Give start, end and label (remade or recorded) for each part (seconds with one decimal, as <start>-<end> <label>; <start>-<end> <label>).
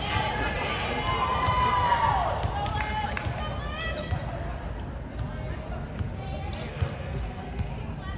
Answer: 0.0-6.7 recorded; 6.7-7.7 remade; 7.7-8.2 recorded